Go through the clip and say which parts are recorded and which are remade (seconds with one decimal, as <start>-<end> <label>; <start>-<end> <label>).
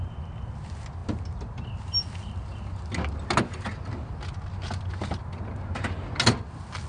0.0-6.9 recorded